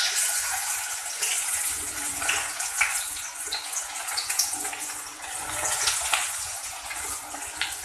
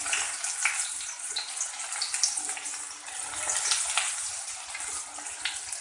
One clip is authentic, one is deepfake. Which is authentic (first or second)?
second